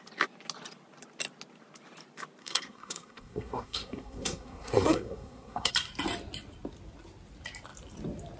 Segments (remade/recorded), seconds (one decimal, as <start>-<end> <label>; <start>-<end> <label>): 0.0-2.4 recorded; 2.4-5.7 remade; 5.7-8.4 recorded